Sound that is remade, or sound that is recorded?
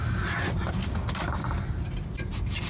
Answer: recorded